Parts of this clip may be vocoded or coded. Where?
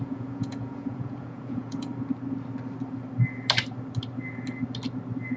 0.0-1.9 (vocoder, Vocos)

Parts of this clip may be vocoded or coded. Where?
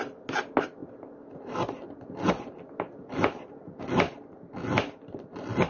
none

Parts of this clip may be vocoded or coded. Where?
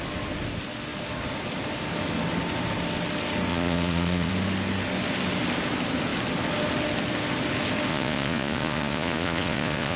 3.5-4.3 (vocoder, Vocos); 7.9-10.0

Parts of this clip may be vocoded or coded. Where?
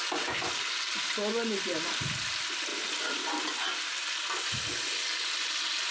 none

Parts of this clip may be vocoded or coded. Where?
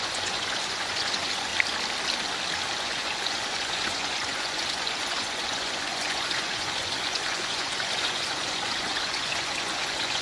0.0-1.5 (vocoder, Vocos); 2.8-10.2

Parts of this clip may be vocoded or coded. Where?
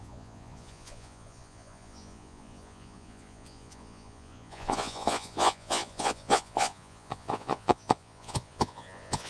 0.0-9.3 (vocoder, Vocos)